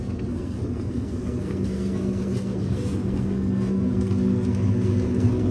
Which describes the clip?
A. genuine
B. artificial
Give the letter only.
B